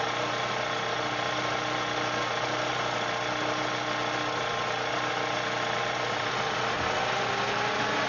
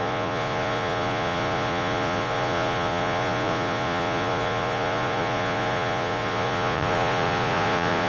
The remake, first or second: second